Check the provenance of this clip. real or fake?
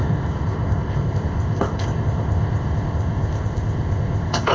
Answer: fake